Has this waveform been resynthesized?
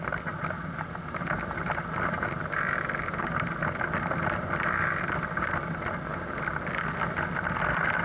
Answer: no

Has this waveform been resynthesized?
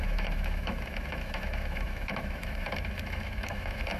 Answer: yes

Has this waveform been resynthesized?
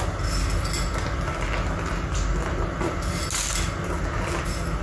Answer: no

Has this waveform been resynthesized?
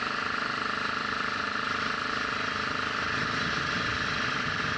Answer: no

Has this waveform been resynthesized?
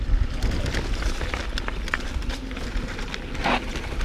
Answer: no